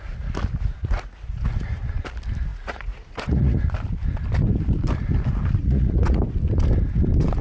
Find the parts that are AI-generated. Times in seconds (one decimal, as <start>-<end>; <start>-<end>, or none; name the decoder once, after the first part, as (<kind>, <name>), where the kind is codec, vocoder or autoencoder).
0.8-1.4 (vocoder, Vocos); 2.5-3.6; 5.6-6.2